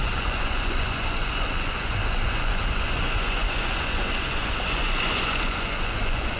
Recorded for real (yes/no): no